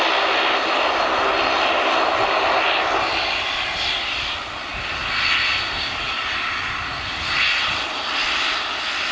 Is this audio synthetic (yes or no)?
no